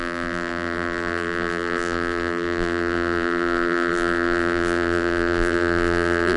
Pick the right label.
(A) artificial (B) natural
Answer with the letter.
A